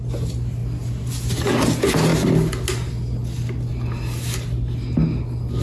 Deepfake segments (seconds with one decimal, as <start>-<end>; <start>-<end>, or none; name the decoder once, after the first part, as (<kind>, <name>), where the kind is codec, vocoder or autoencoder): none